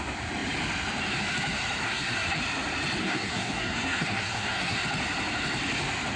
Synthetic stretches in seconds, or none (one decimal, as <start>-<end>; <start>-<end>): 1.8-2.4; 3.0-4.8